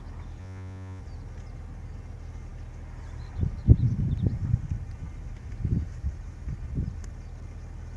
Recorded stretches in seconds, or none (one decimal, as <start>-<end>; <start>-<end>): 0.0-0.4; 1.0-8.0